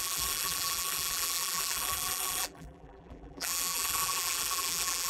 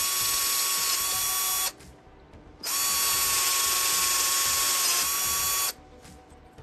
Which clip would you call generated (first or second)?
first